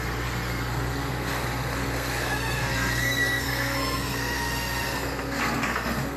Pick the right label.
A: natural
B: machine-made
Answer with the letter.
B